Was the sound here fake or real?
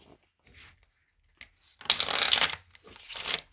real